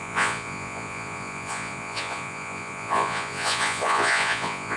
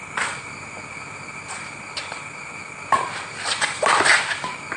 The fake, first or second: first